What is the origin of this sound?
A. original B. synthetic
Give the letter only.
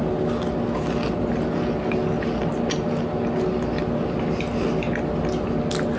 A